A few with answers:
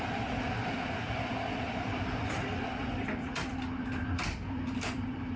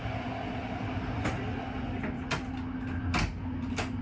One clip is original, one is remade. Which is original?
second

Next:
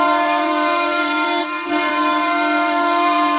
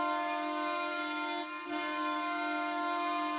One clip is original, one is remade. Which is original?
second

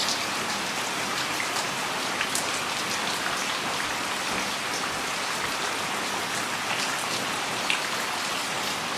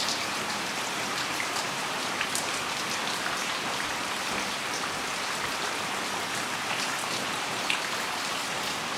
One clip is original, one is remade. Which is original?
first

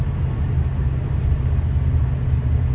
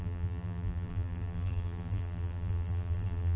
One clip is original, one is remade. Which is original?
first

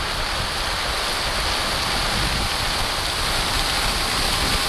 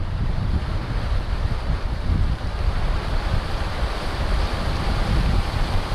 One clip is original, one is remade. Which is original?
first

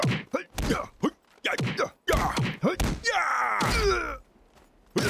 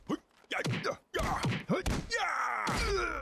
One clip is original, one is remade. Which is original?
first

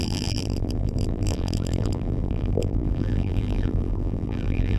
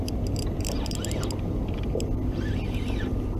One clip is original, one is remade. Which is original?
second